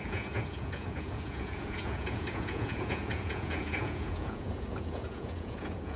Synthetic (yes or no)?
yes